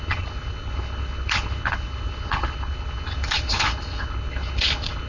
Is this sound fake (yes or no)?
yes